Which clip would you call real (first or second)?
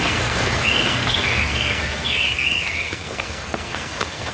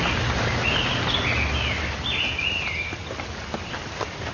second